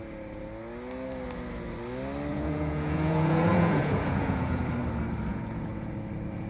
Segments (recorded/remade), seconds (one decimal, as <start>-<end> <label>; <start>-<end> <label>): 0.0-2.3 recorded; 2.3-4.6 remade; 4.6-5.3 recorded; 5.3-5.9 remade; 5.9-6.5 recorded